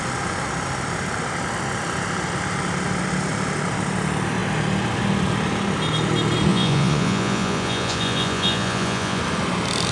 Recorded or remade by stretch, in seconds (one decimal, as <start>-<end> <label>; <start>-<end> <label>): 0.0-6.5 recorded; 6.5-9.2 remade; 9.2-9.9 recorded